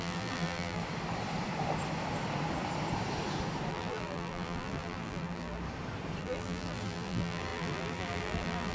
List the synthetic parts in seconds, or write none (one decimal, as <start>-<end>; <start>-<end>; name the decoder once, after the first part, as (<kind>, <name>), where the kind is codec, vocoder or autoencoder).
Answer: 0.0-0.8 (vocoder, BigVGAN v2); 3.7-5.6; 6.2-8.7